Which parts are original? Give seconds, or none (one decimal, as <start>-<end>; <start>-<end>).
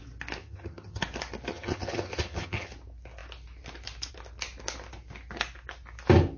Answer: 0.0-0.4; 1.0-1.5; 2.7-6.4